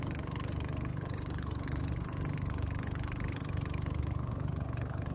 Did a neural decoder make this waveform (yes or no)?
yes